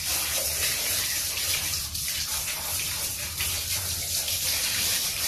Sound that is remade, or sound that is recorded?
remade